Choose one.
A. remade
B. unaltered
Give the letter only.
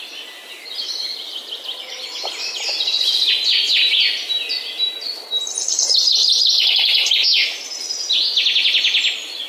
B